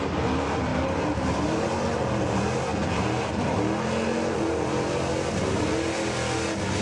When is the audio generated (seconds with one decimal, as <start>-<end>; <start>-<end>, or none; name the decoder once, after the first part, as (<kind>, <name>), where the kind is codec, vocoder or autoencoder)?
none

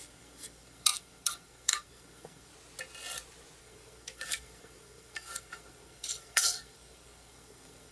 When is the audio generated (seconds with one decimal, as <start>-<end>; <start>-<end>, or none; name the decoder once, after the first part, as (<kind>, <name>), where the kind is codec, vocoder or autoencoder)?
0.0-2.5 (codec, SNAC); 3.6-7.9

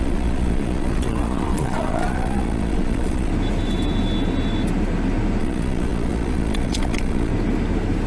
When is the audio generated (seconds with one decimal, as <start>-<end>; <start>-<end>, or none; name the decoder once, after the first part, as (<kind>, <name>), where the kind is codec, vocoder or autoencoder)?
0.0-3.3 (vocoder, Vocos); 5.4-7.3

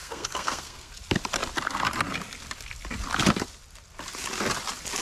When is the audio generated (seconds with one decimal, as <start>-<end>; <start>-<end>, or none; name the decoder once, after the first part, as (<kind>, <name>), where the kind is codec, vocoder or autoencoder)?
0.0-0.9 (codec, SNAC)

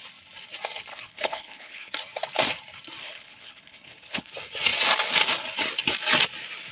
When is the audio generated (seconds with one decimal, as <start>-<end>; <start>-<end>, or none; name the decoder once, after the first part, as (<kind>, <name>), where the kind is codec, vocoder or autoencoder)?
0.9-1.9 (codec, HILCodec); 3.0-4.3

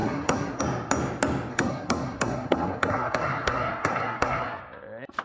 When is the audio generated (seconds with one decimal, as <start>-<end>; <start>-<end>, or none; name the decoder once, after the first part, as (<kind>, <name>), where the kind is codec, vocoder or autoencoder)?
0.0-0.6 (codec, SNAC); 1.5-4.6